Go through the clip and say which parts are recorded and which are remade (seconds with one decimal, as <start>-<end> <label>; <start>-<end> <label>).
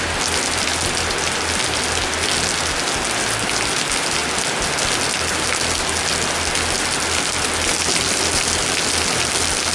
0.0-9.7 recorded